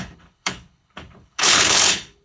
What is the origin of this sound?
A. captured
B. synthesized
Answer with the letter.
B